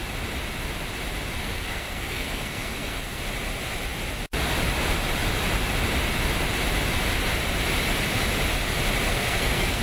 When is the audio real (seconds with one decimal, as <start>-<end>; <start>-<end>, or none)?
0.0-1.4; 3.2-9.1